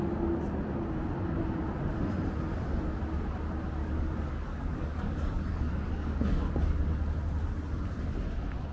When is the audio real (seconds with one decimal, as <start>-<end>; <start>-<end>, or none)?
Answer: 0.0-3.8; 6.5-8.7